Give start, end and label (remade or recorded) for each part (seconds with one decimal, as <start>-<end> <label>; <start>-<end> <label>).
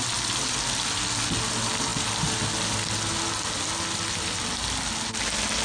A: 0.0-5.6 recorded